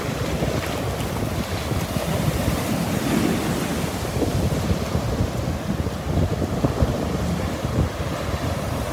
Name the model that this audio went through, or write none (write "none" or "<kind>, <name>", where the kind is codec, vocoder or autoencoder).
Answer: none